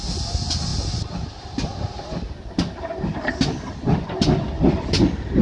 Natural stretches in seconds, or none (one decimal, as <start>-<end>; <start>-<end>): 0.0-5.4